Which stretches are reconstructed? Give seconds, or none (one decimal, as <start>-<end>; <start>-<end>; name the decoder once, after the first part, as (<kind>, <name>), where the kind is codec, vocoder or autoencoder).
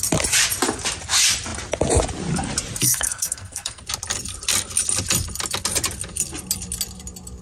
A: 2.8-3.8 (codec, SNAC)